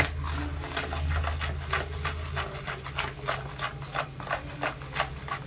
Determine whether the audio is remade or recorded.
recorded